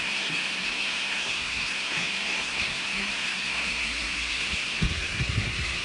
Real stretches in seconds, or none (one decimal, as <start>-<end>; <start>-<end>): none